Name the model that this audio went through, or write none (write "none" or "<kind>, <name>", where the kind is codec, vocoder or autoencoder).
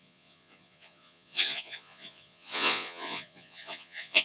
vocoder, Vocos